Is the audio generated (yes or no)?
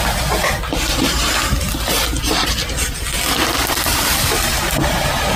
no